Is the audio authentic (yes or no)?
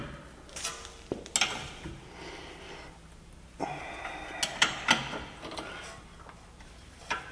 yes